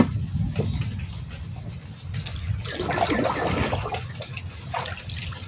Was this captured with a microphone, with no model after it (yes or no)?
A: yes